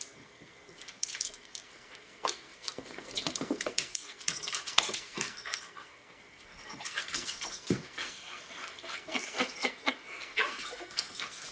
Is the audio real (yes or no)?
no